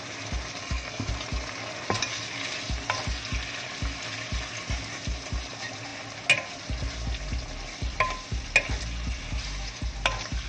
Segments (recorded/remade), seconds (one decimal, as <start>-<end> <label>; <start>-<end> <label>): 0.0-0.6 recorded; 0.6-1.1 remade; 1.1-10.5 recorded